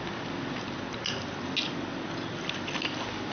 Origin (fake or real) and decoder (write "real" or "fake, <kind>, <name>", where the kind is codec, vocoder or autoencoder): real